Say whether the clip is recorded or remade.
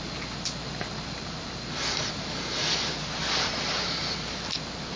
recorded